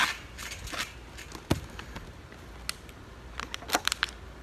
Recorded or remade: recorded